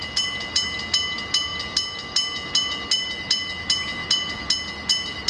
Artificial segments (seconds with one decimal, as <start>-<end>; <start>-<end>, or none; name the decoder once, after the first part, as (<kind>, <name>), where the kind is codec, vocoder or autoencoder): none